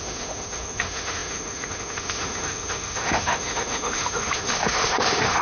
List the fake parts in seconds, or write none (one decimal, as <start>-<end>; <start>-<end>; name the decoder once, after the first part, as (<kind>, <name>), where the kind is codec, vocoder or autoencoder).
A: 0.0-5.4 (autoencoder, DAC-VAE)